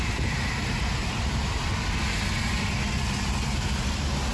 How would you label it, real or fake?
real